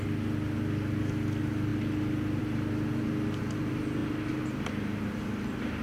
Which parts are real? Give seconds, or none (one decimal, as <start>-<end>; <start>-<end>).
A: 0.0-5.8